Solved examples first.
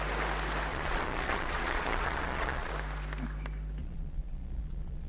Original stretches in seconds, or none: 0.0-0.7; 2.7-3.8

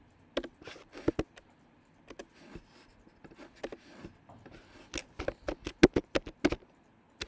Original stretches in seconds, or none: 0.0-7.3

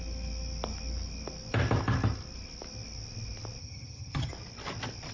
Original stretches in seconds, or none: 0.0-3.6; 4.3-5.1

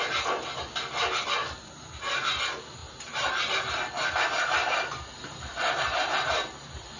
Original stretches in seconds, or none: 0.0-2.8

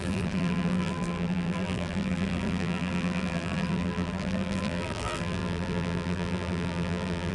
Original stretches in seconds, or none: none

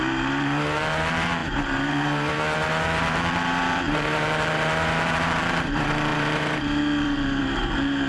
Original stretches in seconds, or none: none